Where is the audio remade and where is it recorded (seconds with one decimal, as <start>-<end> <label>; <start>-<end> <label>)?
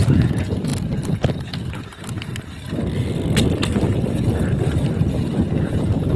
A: 0.0-0.7 remade; 0.7-1.3 recorded; 1.3-1.9 remade; 1.9-5.6 recorded; 5.6-6.2 remade